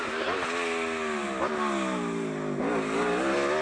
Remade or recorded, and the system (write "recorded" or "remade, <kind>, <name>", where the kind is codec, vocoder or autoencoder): recorded